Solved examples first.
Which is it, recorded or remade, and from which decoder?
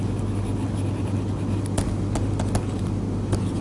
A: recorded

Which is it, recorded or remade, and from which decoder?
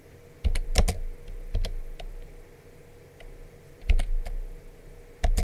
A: recorded